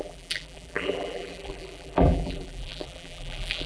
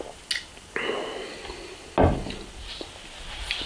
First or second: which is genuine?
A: second